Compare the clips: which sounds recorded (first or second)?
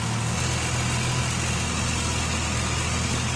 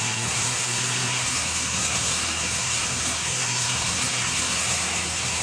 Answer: first